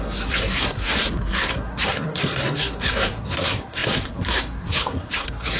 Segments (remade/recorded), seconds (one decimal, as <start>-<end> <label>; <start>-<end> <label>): 0.0-5.6 remade